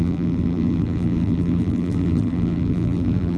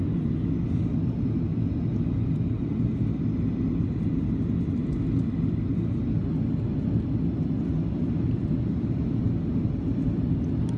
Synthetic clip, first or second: first